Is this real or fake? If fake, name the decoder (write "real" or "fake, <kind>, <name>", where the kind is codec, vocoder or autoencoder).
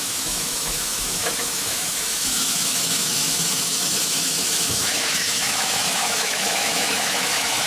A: fake, autoencoder, DAC-VAE